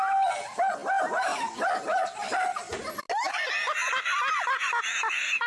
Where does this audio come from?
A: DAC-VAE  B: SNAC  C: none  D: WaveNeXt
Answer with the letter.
C